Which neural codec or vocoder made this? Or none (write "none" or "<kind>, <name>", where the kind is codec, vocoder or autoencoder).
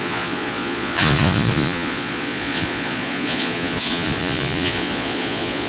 vocoder, Vocos